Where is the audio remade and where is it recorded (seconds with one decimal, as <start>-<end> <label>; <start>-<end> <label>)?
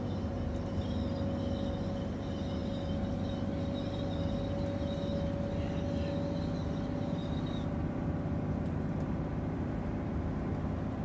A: 0.0-7.8 recorded; 7.8-9.9 remade; 9.9-11.0 recorded